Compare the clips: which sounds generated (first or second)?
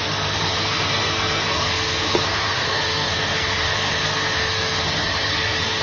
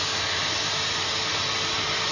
first